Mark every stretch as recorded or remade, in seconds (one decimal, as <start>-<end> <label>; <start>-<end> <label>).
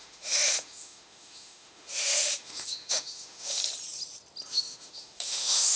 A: 0.0-3.6 remade; 3.6-4.5 recorded; 4.5-5.8 remade